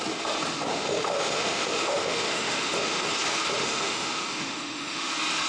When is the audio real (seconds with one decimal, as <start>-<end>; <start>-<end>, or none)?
0.0-0.7; 3.1-3.6; 5.1-5.5